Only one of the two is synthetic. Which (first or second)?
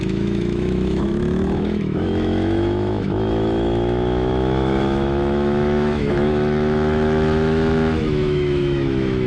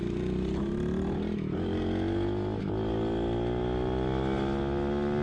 first